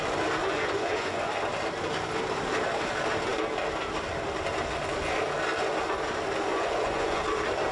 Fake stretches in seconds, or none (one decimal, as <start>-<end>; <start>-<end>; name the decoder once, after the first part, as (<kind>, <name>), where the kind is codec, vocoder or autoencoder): 0.4-1.3 (vocoder, Vocos); 6.5-7.2